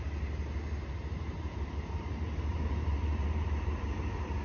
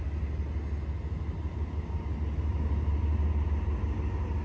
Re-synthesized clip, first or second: first